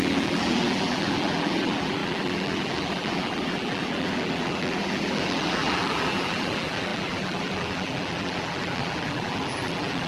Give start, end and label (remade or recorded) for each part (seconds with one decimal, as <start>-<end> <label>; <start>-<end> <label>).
0.0-10.1 remade